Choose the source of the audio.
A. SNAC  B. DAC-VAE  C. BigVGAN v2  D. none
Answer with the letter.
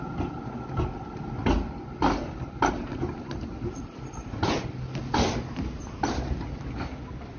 D